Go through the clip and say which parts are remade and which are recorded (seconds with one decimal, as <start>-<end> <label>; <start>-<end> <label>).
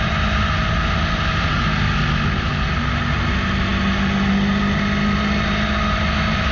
0.0-6.5 recorded